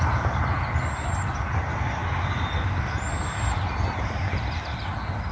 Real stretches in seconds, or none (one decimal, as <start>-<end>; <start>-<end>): 0.0-5.3